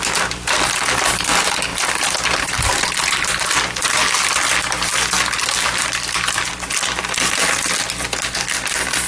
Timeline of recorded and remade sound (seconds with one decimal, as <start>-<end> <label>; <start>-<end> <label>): 0.0-9.1 recorded